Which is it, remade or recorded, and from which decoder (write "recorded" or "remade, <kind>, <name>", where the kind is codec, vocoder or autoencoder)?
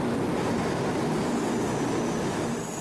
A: recorded